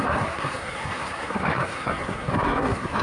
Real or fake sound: fake